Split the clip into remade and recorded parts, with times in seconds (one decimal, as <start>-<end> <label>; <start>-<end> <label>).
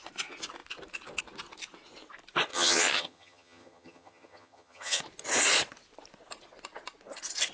0.0-2.5 recorded; 2.5-5.0 remade; 5.0-7.5 recorded